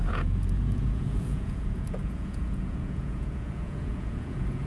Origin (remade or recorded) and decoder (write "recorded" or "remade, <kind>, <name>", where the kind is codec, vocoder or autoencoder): remade, vocoder, Vocos